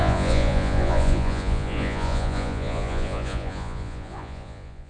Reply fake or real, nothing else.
fake